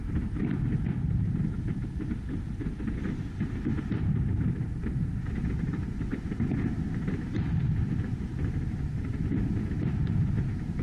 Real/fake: fake